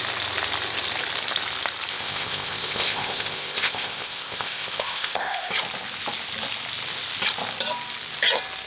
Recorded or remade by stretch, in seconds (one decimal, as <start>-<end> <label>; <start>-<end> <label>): 0.0-1.9 recorded; 1.9-5.5 remade; 5.5-8.7 recorded